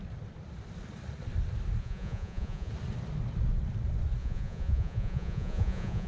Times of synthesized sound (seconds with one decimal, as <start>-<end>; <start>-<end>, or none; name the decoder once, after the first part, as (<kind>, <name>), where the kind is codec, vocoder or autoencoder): 1.8-2.7 (vocoder, Vocos); 4.2-6.1